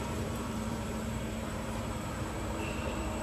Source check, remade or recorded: remade